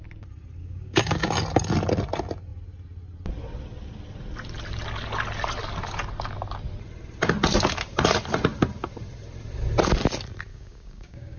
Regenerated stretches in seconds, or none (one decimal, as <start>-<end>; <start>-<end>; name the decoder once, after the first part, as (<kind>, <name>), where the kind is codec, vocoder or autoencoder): 0.6-1.3 (codec, DAC); 10.5-11.4